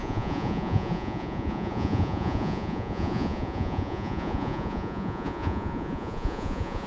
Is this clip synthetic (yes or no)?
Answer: yes